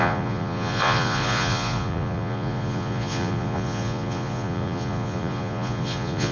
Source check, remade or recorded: remade